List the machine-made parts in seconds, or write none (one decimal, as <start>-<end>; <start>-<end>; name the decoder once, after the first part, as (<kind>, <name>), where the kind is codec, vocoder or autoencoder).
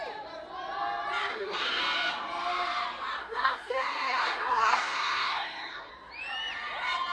1.3-1.8 (codec, SNAC); 3.2-5.9